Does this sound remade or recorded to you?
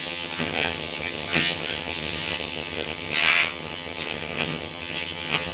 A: remade